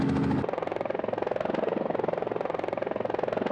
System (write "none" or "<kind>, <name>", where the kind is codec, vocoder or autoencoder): none